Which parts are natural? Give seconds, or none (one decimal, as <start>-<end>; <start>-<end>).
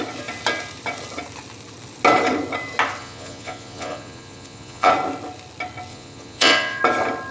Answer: 0.0-3.0; 4.9-5.9; 6.8-7.3